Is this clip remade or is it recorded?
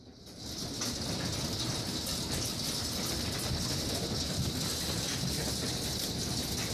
recorded